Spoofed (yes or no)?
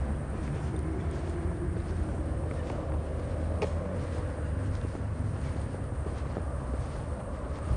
no